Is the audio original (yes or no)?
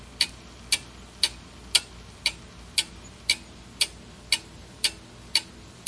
yes